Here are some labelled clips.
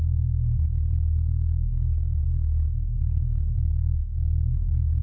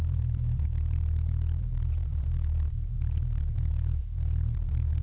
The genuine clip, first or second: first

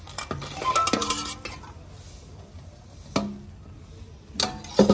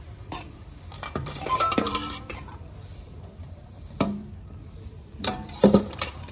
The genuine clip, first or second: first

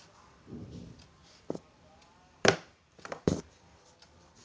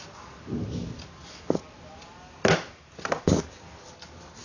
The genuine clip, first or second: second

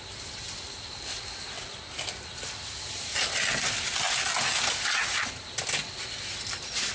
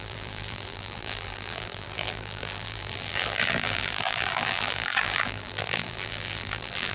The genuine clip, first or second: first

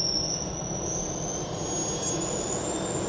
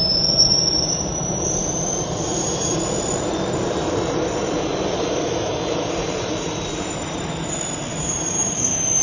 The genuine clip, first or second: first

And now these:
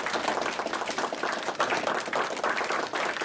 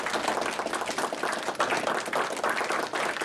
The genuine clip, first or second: second